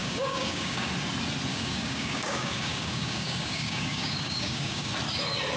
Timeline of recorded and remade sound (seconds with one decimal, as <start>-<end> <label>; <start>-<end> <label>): 0.0-0.9 remade; 0.9-1.5 recorded; 1.5-4.9 remade; 4.9-5.6 recorded